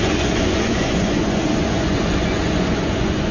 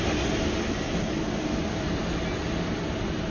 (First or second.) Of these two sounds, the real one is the second